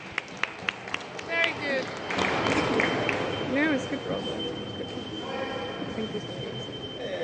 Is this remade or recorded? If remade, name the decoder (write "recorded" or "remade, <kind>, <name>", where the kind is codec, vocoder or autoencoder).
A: recorded